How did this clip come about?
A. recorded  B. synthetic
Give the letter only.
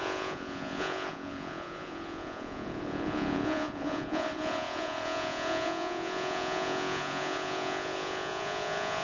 B